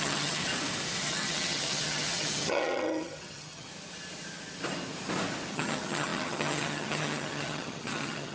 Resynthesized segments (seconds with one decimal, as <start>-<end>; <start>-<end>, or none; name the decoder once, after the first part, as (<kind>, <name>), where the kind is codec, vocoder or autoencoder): 0.0-0.4 (vocoder, HiFi-GAN); 1.0-3.7; 5.5-8.3